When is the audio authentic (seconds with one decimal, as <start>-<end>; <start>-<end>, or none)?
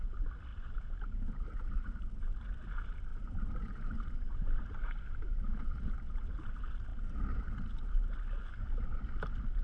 0.0-0.5; 2.5-3.1; 5.9-9.6